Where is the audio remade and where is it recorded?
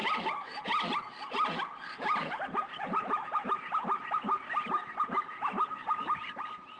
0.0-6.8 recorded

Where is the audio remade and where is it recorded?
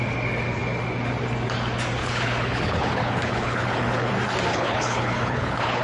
0.0-2.0 recorded; 2.0-4.1 remade; 4.1-4.5 recorded; 4.5-5.8 remade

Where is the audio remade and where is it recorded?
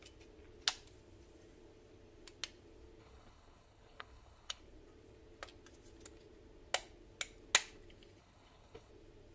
0.0-3.0 recorded; 3.0-4.6 remade; 4.6-8.2 recorded; 8.2-8.9 remade; 8.9-9.3 recorded